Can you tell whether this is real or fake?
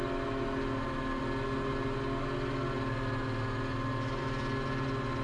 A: real